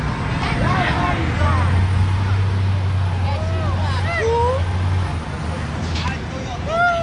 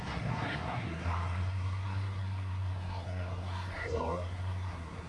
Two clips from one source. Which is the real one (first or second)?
first